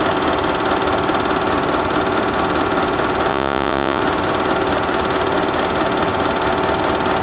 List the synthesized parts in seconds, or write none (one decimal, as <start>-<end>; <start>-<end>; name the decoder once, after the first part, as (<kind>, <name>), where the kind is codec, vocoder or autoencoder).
3.3-4.0 (vocoder, Vocos)